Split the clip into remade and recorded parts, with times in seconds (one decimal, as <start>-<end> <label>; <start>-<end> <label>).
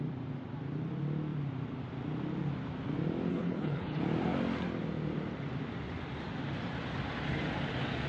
0.0-3.3 recorded; 3.3-4.0 remade; 4.0-8.1 recorded